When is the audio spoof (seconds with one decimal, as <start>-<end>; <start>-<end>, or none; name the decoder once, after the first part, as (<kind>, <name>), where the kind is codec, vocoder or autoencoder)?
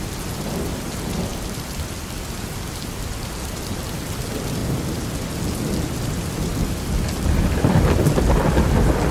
1.3-3.8 (vocoder, BigVGAN v2); 4.6-5.2